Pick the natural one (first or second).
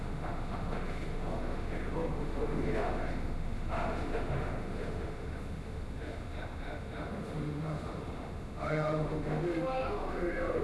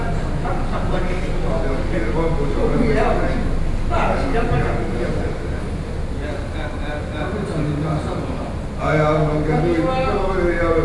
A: second